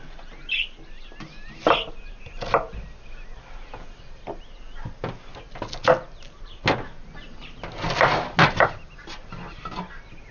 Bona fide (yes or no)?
yes